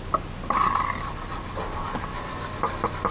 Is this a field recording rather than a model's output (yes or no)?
yes